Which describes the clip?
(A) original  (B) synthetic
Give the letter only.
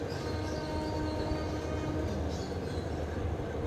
A